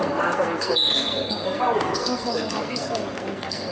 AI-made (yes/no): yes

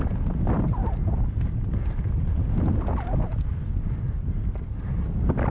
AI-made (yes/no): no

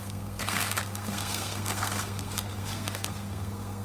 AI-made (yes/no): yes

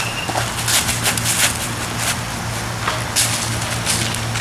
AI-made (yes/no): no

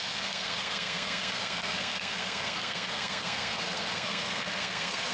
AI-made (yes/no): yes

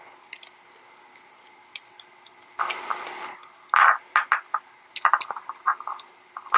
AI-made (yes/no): no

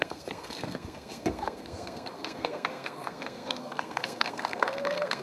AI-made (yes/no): yes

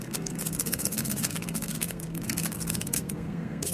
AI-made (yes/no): yes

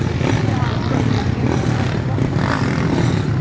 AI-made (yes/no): no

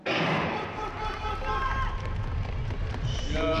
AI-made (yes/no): no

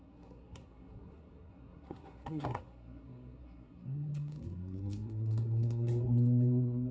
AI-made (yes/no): yes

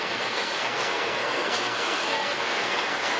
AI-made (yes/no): yes